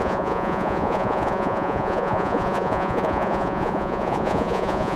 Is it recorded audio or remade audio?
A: remade